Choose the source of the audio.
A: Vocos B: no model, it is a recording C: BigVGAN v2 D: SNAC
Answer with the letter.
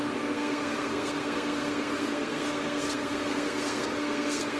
D